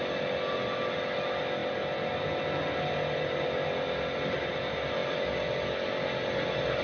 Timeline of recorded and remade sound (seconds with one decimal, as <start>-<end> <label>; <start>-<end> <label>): 0.0-6.8 recorded